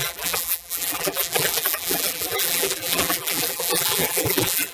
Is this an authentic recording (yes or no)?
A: no